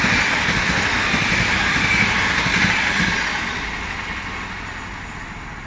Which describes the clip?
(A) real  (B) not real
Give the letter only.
A